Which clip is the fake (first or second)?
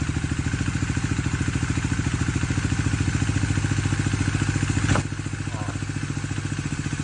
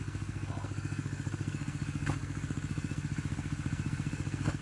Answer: second